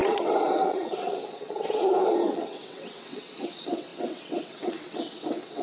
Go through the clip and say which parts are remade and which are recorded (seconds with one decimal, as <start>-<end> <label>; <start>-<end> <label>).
0.0-5.6 remade